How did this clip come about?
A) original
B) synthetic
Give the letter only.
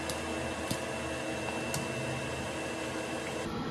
A